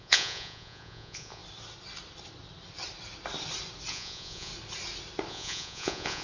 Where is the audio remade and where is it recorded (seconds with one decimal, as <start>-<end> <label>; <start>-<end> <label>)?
0.0-1.4 remade; 1.4-3.9 recorded; 3.9-4.5 remade; 4.5-5.3 recorded; 5.3-6.2 remade